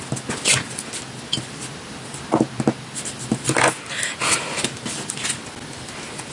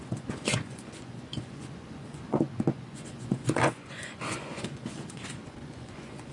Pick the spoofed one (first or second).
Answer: second